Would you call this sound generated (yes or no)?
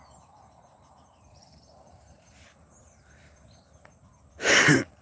yes